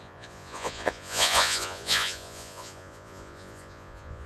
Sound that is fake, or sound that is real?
fake